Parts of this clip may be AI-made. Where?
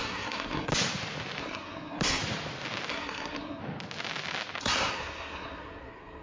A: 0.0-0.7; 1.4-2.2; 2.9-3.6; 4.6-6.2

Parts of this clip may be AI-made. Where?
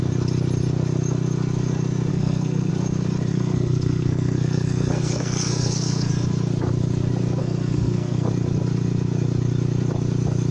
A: 2.1-2.7; 3.3-6.1; 7.4-8.3